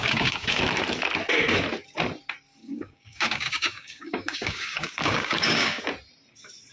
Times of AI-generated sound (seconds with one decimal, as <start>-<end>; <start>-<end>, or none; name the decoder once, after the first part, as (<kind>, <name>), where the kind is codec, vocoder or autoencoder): 0.0-0.6 (codec, DAC); 2.6-5.8